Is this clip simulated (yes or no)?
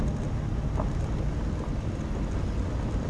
no